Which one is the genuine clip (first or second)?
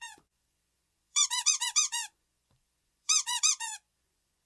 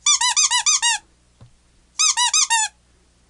second